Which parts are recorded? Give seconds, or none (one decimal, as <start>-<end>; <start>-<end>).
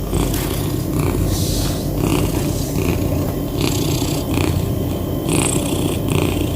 0.0-6.6